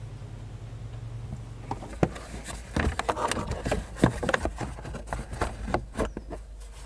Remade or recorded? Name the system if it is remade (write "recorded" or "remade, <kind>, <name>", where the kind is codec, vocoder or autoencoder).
recorded